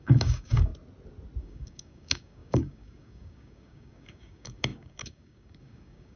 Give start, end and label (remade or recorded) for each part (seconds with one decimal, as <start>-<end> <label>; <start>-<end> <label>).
0.0-0.7 remade; 0.7-1.4 recorded; 1.4-6.2 remade